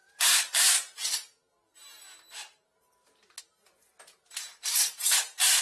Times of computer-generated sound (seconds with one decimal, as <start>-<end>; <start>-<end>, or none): none